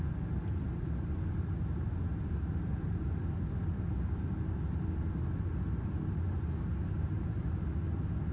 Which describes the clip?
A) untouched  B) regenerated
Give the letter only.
A